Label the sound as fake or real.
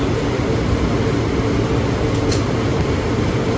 real